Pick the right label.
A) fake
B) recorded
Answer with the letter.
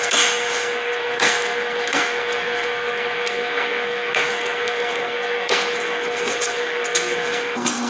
A